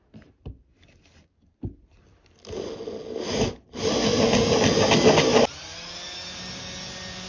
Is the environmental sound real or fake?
real